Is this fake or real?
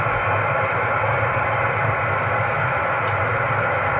real